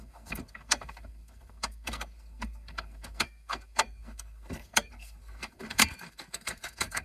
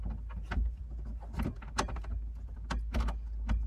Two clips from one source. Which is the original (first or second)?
second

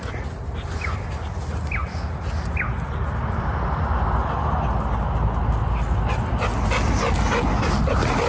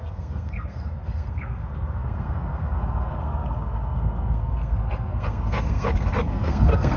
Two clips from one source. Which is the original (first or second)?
first